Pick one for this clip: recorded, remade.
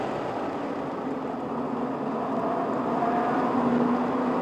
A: recorded